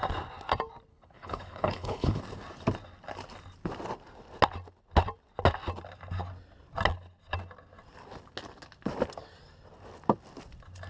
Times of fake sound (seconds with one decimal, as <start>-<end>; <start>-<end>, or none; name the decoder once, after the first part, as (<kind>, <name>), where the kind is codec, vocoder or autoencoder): 0.9-2.2 (codec, HILCodec)